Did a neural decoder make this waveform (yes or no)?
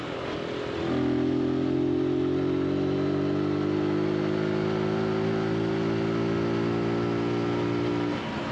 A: no